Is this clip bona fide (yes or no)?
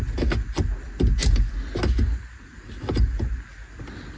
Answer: yes